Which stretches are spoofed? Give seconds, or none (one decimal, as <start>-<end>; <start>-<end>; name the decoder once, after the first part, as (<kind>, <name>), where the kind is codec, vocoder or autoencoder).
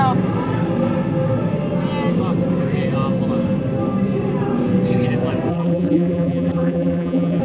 5.5-7.4 (vocoder, BigVGAN v2)